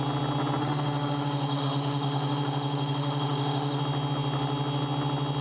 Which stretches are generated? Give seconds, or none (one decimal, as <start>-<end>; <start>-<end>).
0.6-3.8

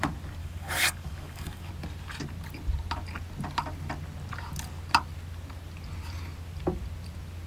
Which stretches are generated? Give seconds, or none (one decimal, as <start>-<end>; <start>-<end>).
0.4-1.7

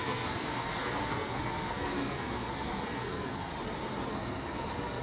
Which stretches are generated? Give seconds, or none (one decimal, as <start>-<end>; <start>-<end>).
0.0-3.5; 4.1-5.0

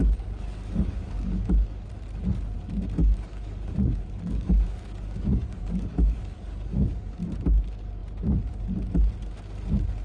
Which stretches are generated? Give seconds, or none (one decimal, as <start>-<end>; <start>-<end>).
0.0-1.9; 3.0-7.2

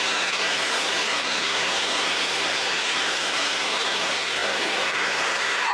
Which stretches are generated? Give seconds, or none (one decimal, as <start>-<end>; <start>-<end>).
0.0-5.7

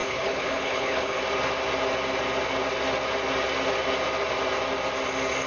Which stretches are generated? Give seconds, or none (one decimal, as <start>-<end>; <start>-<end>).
0.0-1.2